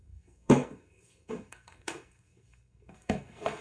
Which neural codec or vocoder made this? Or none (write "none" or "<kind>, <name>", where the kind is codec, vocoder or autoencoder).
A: codec, SNAC